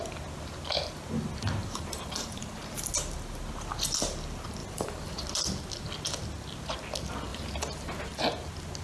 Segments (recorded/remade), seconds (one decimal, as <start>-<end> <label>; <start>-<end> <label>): 0.0-1.6 recorded; 1.6-2.9 remade; 2.9-4.6 recorded; 4.6-5.2 remade; 5.2-7.3 recorded; 7.3-8.2 remade; 8.2-8.8 recorded